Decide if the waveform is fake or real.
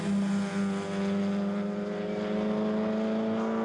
real